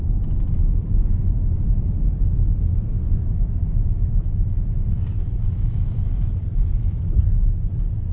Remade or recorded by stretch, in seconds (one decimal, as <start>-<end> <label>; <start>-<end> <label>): 0.0-8.1 recorded